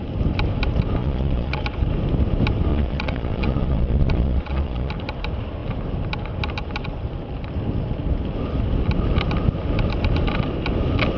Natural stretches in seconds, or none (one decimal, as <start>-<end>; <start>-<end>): 0.0-1.0; 1.6-2.7; 4.9-11.2